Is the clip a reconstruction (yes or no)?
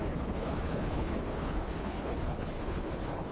yes